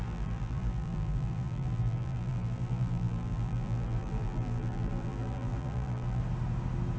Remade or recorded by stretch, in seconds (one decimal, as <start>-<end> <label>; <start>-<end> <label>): 0.0-6.2 remade; 6.2-7.0 recorded